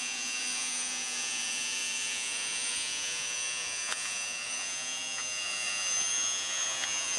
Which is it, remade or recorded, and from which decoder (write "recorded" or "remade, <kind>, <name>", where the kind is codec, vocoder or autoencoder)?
remade, vocoder, Vocos